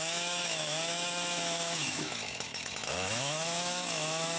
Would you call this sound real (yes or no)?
no